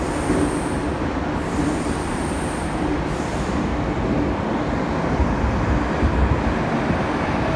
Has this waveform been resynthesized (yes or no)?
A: no